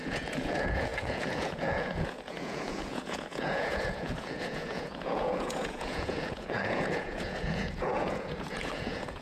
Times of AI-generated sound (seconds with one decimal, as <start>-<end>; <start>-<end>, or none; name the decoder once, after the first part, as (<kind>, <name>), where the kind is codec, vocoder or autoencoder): 0.0-9.2 (vocoder, Vocos)